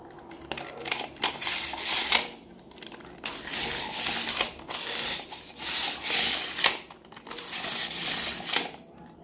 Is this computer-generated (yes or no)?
no